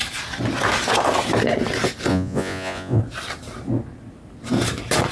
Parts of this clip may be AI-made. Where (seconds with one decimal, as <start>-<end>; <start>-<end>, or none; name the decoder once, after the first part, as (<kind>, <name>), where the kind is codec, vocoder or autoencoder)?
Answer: 2.1-3.0 (vocoder, Vocos)